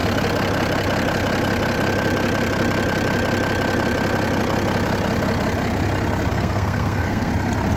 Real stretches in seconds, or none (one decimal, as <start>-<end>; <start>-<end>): 0.0-6.3; 7.3-7.8